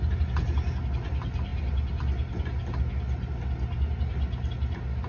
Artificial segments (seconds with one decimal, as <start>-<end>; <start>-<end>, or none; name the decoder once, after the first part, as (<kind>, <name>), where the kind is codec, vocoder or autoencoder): none